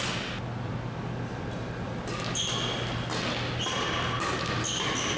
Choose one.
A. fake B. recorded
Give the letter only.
B